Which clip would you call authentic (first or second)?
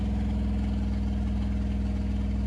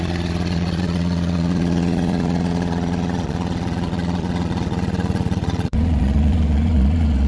first